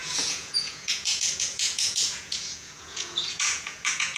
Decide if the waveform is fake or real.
fake